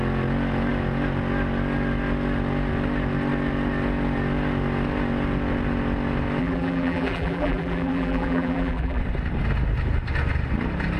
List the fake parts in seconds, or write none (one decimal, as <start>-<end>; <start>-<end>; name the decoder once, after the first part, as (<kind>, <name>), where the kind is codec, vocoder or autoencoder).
6.4-9.0 (vocoder, BigVGAN v2)